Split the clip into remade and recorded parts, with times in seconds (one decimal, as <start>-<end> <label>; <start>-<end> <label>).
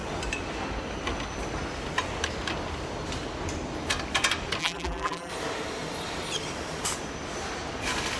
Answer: 0.0-4.6 recorded; 4.6-5.3 remade; 5.3-8.2 recorded